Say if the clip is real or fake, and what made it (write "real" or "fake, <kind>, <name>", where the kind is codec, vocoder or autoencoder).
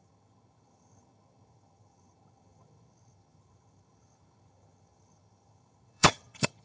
fake, vocoder, HiFi-GAN